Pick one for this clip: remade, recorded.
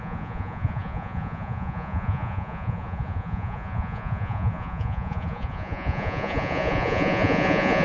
remade